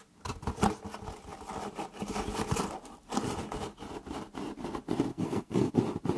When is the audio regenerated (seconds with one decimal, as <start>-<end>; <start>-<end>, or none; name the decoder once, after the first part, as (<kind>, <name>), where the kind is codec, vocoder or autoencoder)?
5.1-5.7 (codec, SNAC)